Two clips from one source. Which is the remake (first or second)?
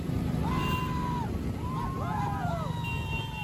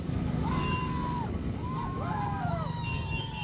second